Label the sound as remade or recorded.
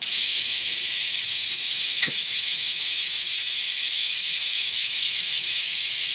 remade